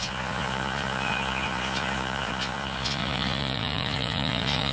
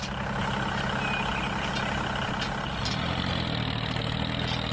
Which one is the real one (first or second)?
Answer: second